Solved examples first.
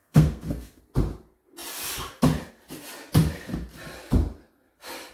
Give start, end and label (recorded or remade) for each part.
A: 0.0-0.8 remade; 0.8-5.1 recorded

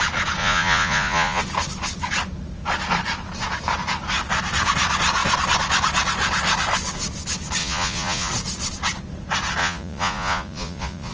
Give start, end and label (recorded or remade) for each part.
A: 0.0-0.4 recorded; 0.4-1.4 remade; 1.4-7.6 recorded; 7.6-8.3 remade; 8.3-9.6 recorded; 9.6-11.1 remade

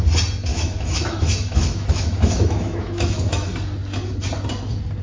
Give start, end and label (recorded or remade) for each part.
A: 0.0-0.5 recorded; 0.5-3.5 remade; 3.5-5.0 recorded

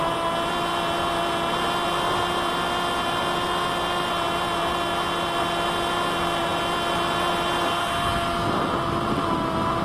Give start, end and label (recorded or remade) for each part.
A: 0.0-9.8 recorded

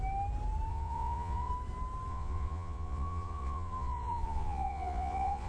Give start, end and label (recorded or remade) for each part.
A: 0.0-0.7 recorded; 0.7-1.5 remade; 1.5-2.1 recorded; 2.1-5.5 remade

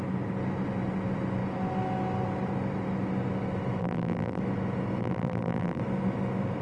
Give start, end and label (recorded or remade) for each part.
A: 0.0-3.8 recorded; 3.8-4.4 remade; 4.4-5.0 recorded; 5.0-5.8 remade; 5.8-6.6 recorded